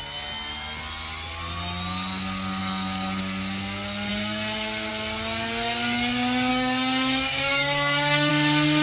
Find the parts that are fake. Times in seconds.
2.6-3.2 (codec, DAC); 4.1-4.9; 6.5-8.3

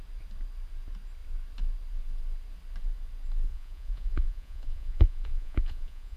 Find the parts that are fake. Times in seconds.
3.5-6.2 (vocoder, Vocos)

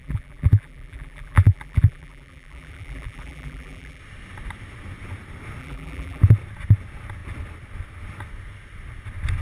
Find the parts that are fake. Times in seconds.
0.0-4.0 (vocoder, BigVGAN v2); 5.6-6.2

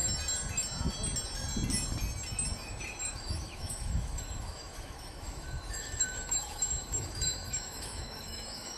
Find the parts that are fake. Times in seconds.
3.1-8.8 (autoencoder, DAC-VAE)